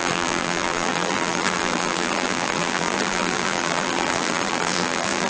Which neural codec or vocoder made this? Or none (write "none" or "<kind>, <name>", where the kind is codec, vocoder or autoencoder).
vocoder, BigVGAN v2